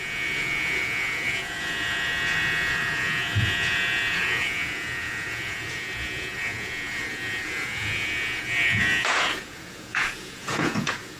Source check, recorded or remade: remade